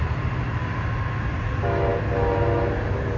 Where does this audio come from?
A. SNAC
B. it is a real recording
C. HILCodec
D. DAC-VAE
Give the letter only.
B